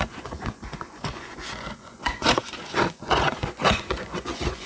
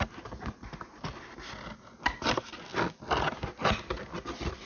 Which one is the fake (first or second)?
first